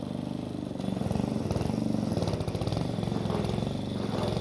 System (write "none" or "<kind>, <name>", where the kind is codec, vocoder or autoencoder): none